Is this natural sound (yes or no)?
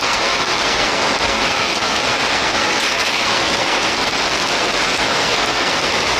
no